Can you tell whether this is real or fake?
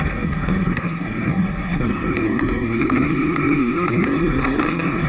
fake